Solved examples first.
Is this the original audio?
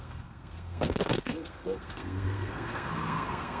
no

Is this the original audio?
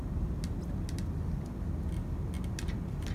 yes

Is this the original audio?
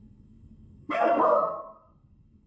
no